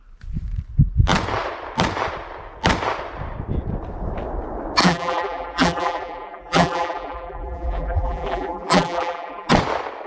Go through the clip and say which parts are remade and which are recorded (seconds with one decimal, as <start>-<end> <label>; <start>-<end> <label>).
0.0-4.8 recorded; 4.8-9.5 remade; 9.5-10.1 recorded